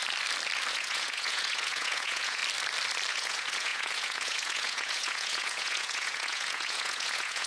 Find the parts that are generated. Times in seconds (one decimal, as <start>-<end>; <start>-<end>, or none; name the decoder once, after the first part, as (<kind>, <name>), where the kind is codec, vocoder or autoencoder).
0.7-2.4 (vocoder, Vocos); 3.1-7.5